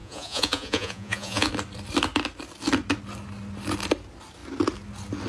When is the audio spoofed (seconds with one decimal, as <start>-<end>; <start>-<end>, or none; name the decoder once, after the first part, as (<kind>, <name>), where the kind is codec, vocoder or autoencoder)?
0.0-1.5 (vocoder, Vocos)